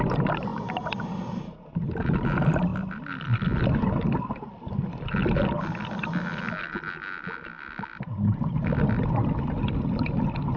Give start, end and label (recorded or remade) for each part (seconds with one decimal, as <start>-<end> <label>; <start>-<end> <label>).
0.0-10.6 recorded